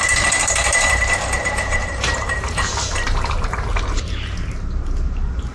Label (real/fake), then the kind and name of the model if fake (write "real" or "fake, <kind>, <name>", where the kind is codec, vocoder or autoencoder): fake, vocoder, BigVGAN v2